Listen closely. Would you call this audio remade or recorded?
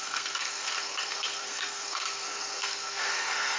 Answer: remade